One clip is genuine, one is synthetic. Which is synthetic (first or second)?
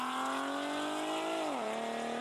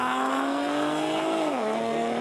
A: second